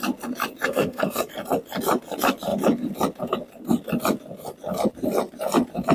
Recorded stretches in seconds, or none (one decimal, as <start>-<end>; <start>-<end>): 0.0-0.7; 1.3-5.9